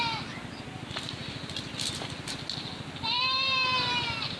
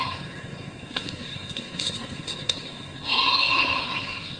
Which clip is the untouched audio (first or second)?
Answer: first